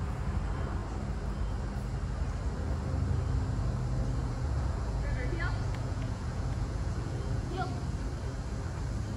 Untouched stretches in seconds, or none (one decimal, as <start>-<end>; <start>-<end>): 0.0-4.2; 7.7-9.2